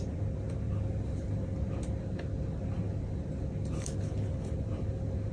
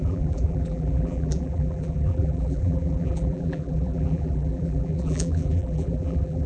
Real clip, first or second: first